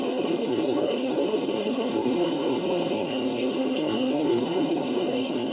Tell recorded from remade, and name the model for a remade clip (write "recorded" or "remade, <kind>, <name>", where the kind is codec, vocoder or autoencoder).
remade, codec, SNAC